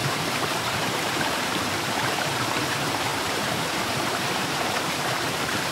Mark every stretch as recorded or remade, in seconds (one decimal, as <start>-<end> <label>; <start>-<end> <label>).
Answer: 0.0-5.7 remade